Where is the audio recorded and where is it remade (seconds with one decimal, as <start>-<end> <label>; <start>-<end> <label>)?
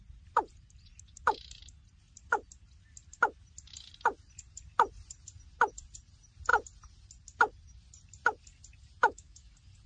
0.0-9.0 recorded; 9.0-9.5 remade; 9.5-9.9 recorded